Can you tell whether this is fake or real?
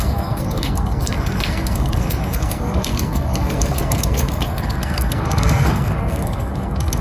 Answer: fake